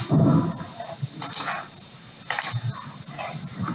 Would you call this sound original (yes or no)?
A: yes